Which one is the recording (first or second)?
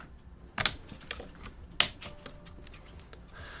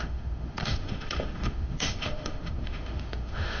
first